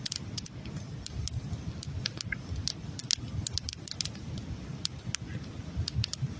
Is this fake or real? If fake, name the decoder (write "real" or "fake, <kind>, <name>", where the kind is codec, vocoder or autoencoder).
real